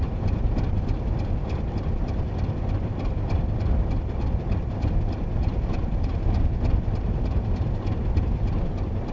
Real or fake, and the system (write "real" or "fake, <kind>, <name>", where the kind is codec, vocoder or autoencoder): real